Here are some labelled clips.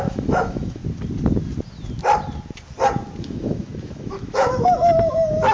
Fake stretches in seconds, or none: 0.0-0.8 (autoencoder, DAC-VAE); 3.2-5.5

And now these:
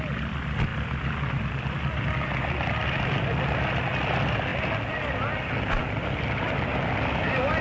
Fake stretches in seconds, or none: none

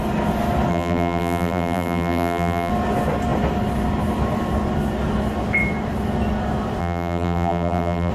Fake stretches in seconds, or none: 0.7-2.7 (vocoder, BigVGAN v2); 6.8-8.1

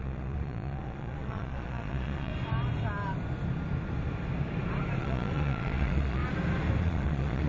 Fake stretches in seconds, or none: 0.0-2.3 (vocoder, Vocos); 5.0-6.2; 6.8-7.5